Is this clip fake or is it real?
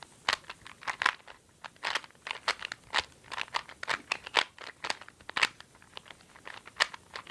real